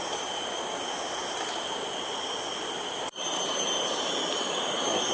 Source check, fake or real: real